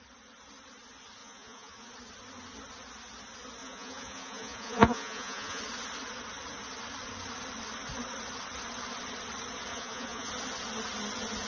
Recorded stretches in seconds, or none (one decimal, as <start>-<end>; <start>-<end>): 0.0-1.2; 1.9-3.6; 5.6-9.7; 10.3-11.5